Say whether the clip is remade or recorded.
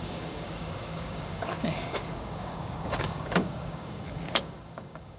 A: remade